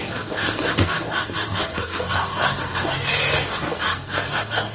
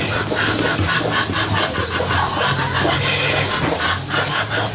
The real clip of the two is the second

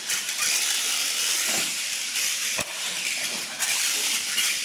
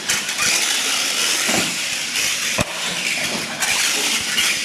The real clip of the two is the second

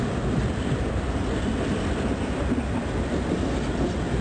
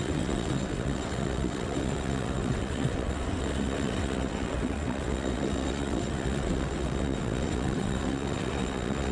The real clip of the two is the first